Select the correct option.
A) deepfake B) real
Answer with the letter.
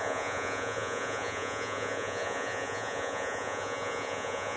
A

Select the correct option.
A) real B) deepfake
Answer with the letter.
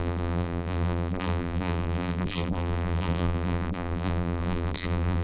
B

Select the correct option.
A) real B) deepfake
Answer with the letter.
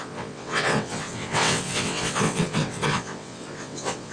B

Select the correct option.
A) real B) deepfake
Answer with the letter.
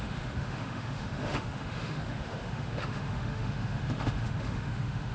B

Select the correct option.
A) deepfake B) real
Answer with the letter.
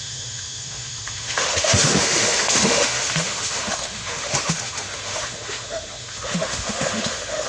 A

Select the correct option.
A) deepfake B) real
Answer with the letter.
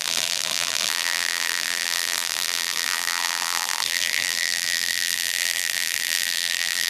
A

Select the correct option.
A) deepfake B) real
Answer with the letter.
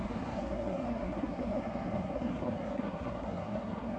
A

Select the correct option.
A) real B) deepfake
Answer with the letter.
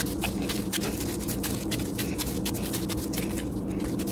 A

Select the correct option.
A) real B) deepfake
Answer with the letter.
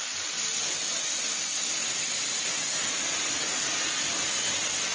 A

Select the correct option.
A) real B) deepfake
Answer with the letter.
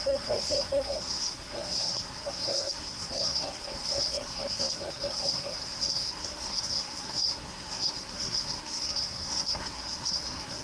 B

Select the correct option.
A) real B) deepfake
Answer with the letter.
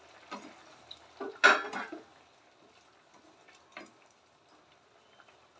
A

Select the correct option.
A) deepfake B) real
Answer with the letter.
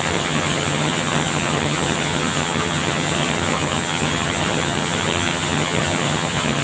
A